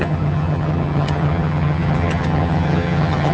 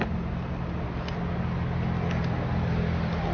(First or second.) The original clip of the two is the second